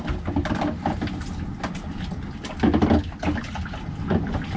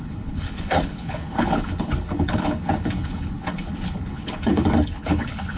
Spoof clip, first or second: second